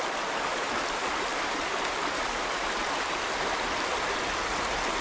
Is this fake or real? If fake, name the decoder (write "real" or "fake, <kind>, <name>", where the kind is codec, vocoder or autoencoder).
real